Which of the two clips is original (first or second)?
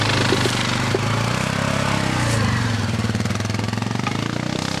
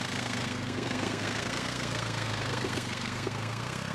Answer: first